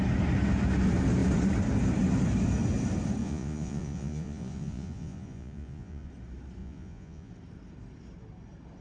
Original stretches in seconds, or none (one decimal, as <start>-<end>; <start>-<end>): 0.0-3.2; 6.1-6.6; 7.3-8.8